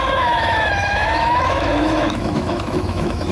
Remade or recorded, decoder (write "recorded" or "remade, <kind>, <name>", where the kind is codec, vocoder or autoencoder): remade, autoencoder, DAC-VAE